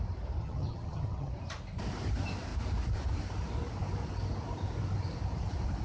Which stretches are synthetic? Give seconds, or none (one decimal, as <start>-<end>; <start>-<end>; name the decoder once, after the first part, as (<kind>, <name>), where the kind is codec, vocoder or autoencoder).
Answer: 0.4-1.3 (vocoder, HiFi-GAN)